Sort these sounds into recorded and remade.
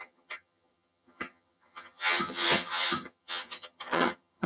remade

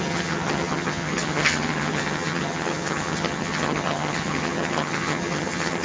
remade